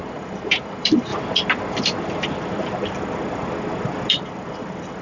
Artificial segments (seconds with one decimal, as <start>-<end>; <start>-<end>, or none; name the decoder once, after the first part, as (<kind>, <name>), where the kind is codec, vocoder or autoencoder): 0.0-1.1 (vocoder, BigVGAN v2); 4.1-5.0